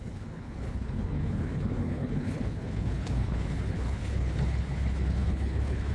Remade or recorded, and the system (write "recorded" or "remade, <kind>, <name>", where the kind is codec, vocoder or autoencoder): remade, codec, HILCodec